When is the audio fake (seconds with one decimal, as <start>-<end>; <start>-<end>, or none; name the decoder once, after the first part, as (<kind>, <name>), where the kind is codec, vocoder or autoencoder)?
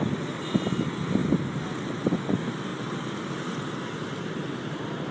2.7-5.1 (vocoder, BigVGAN v2)